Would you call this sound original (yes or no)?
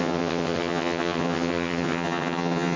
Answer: no